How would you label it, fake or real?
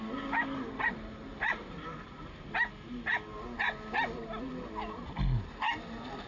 real